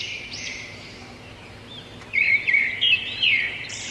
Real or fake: fake